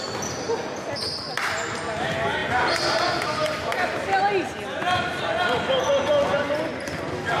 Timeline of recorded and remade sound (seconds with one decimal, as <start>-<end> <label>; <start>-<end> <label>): 0.0-7.4 recorded